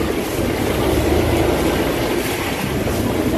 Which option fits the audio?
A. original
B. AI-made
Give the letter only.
A